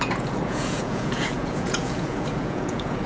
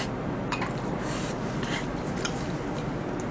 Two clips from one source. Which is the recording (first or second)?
second